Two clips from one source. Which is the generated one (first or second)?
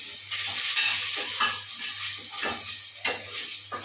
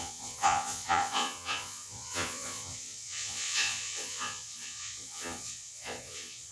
second